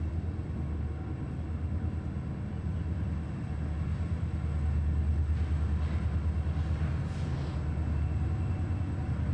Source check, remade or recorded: recorded